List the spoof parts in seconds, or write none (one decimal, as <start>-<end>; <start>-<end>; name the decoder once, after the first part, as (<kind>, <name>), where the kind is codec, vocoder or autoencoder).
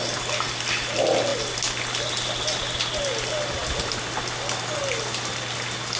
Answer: none